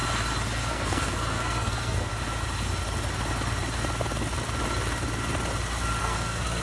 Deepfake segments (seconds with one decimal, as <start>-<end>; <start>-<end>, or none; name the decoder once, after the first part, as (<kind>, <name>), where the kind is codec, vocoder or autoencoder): 0.7-2.1 (codec, SNAC); 6.0-6.6